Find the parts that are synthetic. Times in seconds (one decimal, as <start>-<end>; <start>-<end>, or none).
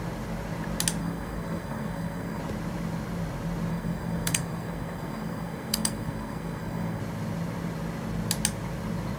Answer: 1.0-2.4; 3.7-7.0